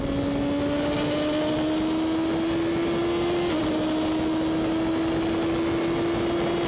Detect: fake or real real